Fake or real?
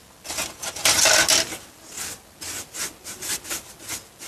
real